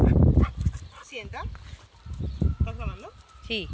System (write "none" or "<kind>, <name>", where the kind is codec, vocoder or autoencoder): none